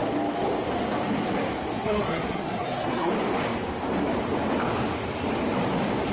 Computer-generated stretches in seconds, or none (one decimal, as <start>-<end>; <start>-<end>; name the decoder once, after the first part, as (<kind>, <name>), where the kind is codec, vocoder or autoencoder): 1.7-3.1 (codec, SNAC)